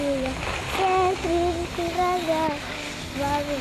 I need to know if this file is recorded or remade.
recorded